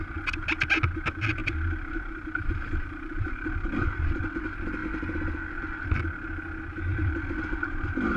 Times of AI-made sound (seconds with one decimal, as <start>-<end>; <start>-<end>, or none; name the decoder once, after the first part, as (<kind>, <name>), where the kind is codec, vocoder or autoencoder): 1.4-4.2 (vocoder, BigVGAN v2); 6.9-7.4